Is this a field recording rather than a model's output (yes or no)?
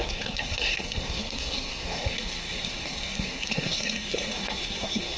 no